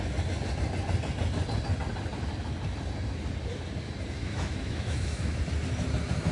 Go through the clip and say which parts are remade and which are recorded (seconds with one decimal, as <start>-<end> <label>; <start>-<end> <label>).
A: 0.0-4.2 recorded; 4.2-5.4 remade; 5.4-6.3 recorded